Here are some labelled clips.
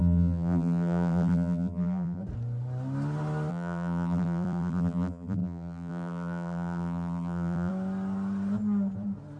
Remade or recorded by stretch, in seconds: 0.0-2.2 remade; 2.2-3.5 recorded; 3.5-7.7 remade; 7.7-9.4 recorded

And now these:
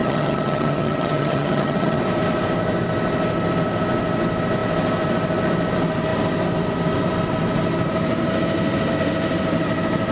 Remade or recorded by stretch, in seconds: 0.0-2.0 remade; 2.0-10.1 recorded

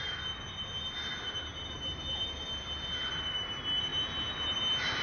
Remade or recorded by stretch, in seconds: 0.0-5.0 recorded

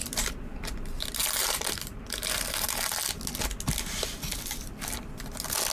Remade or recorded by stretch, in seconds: 0.0-1.4 recorded; 1.4-2.0 remade; 2.0-5.7 recorded